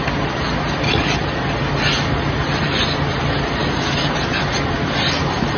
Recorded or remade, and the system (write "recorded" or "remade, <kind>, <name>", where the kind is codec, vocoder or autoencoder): recorded